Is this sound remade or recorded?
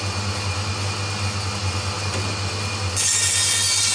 recorded